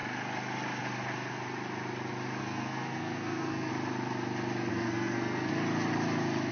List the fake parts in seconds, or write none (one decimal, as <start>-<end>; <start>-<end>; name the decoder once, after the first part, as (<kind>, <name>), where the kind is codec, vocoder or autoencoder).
2.4-3.7 (codec, SNAC); 4.7-5.5